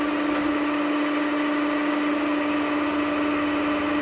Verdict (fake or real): real